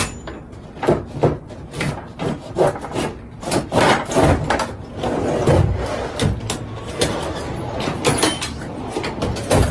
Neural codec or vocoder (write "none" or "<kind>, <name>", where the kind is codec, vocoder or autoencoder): none